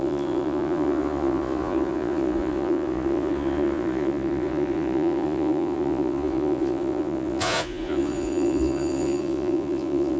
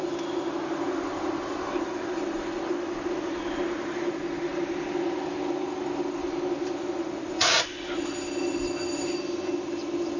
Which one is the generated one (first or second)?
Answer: first